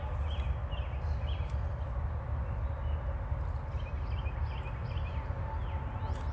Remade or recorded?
recorded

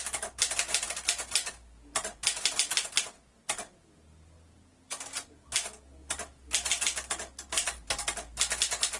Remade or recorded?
recorded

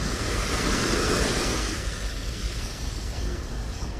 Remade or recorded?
remade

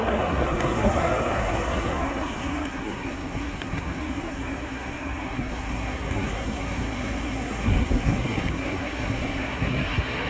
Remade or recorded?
remade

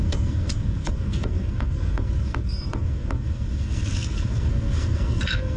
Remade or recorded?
remade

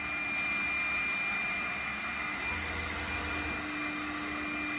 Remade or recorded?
recorded